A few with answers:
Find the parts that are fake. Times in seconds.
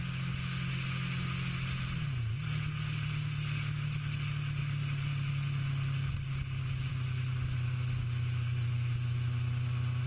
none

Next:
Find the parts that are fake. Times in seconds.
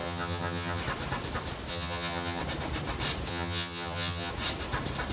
0.0-0.8 (vocoder, HiFi-GAN); 1.7-2.4; 3.3-4.3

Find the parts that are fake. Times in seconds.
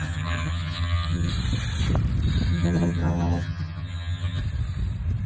0.0-1.3 (vocoder, HiFi-GAN); 2.5-4.4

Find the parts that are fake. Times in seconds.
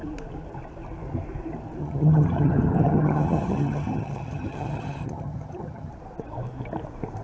1.8-5.9 (vocoder, HiFi-GAN)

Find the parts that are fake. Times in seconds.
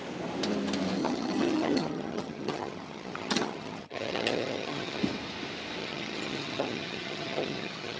1.0-5.0 (vocoder, HiFi-GAN); 5.8-8.0